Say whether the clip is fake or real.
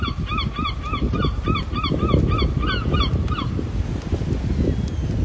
real